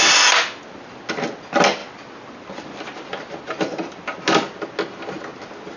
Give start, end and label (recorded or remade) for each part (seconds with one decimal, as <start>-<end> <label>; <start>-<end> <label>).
0.0-5.8 recorded